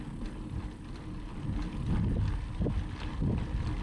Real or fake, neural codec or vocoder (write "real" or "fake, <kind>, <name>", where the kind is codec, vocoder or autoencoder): real